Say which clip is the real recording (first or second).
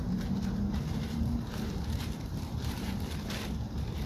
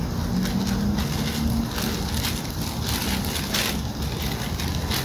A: second